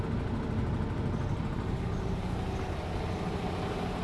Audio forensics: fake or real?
real